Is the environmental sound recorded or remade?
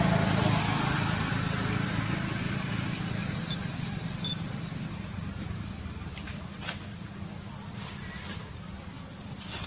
recorded